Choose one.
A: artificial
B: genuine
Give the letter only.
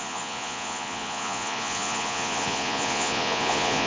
A